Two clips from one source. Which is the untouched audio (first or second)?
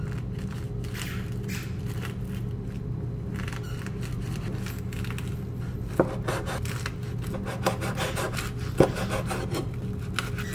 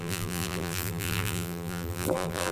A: first